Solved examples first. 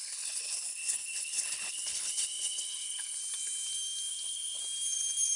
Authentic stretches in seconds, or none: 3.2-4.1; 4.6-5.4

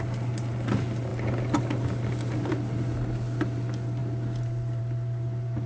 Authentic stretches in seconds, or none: 0.0-5.7

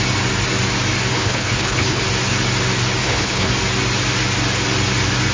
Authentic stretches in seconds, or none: 0.0-1.1; 2.0-3.0; 3.5-5.3